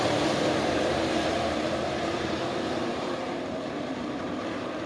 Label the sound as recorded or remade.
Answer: remade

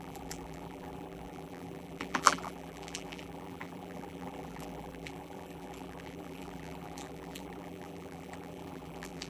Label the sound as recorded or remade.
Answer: remade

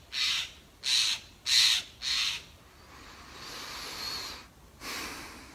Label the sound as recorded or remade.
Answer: recorded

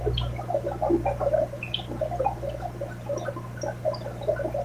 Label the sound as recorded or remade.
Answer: recorded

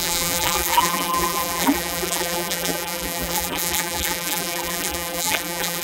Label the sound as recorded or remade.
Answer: remade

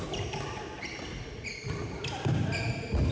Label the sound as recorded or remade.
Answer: recorded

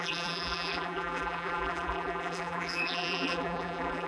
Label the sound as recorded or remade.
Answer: remade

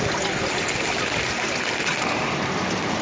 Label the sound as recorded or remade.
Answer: recorded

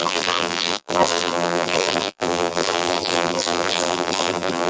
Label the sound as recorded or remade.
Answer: remade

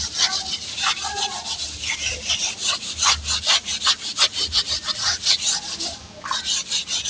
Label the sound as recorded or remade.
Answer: recorded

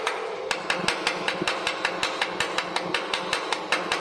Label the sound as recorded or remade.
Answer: recorded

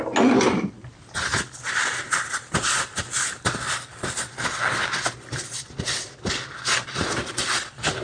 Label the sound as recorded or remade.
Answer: recorded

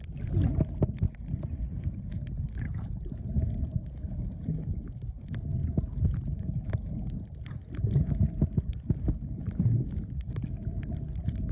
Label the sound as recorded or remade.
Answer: recorded